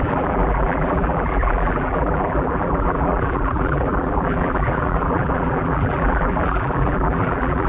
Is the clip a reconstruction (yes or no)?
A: yes